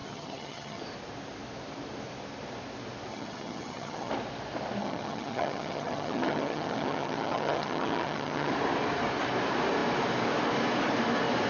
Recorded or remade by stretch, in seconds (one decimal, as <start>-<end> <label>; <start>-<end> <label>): 0.0-0.8 remade; 0.8-3.1 recorded; 3.1-4.1 remade; 4.1-4.8 recorded; 4.8-8.5 remade; 8.5-11.5 recorded